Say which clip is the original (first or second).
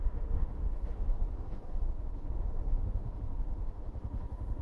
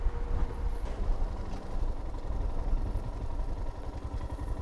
second